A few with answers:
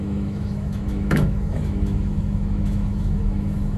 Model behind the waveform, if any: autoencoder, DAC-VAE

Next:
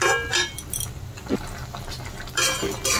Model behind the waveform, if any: none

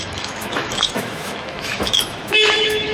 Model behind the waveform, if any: autoencoder, DAC-VAE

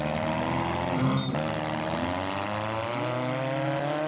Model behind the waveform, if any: none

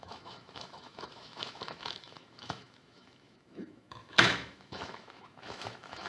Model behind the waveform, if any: autoencoder, DAC-VAE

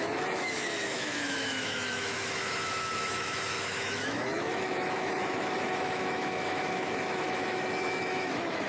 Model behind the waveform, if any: autoencoder, DAC-VAE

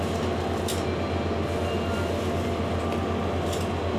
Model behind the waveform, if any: none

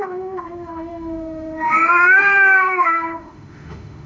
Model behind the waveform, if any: autoencoder, DAC-VAE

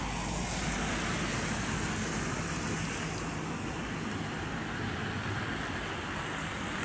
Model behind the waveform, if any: none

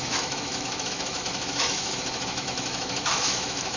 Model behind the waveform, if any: autoencoder, DAC-VAE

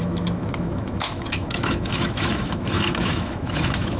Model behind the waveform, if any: autoencoder, DAC-VAE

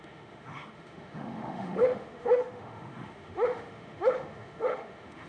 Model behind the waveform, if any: autoencoder, DAC-VAE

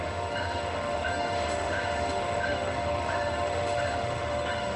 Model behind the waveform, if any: autoencoder, DAC-VAE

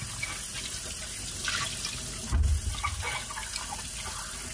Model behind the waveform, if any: none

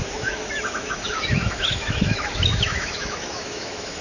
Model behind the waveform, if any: autoencoder, DAC-VAE